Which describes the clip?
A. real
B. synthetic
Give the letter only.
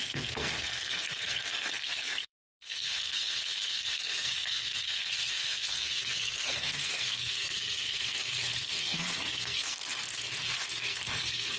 B